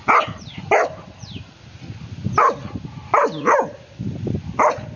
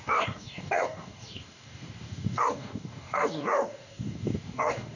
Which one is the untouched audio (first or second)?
first